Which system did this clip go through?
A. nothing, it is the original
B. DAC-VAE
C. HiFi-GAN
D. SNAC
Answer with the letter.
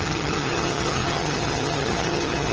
C